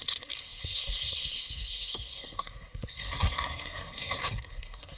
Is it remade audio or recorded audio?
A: remade